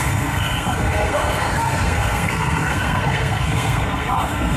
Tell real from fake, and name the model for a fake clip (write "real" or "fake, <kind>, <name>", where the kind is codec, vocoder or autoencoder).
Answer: fake, codec, SNAC